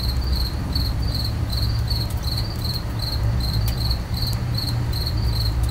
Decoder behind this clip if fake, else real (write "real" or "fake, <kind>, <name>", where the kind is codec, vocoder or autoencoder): fake, vocoder, BigVGAN v2